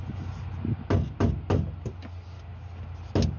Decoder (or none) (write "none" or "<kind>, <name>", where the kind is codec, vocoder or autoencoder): none